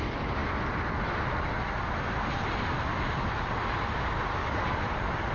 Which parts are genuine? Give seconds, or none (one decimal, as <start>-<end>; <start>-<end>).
0.0-4.4